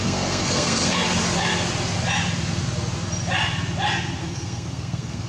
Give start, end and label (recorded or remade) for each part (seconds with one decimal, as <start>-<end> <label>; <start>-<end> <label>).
0.0-1.0 remade; 1.0-4.2 recorded; 4.2-5.3 remade